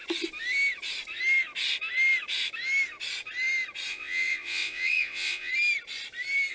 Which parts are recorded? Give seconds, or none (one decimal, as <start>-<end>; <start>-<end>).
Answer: 0.0-3.9; 5.5-6.5